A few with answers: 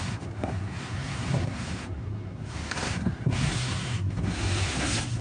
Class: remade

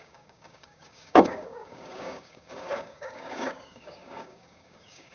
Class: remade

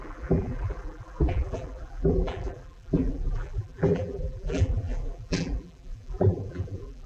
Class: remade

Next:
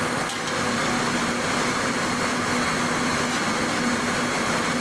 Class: recorded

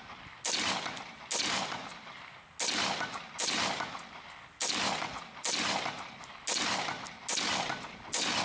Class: recorded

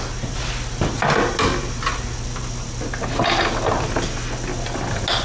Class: recorded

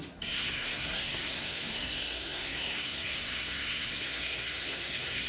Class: remade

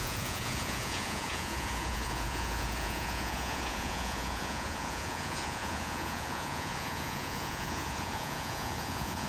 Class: remade